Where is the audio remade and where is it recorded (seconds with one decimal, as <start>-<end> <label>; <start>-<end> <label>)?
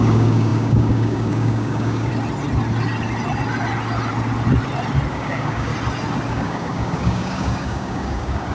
0.0-2.1 remade; 2.1-5.1 recorded; 5.1-5.7 remade; 5.7-6.3 recorded; 6.3-8.5 remade